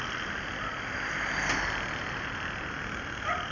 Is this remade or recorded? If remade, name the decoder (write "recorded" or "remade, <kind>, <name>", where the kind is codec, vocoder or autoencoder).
recorded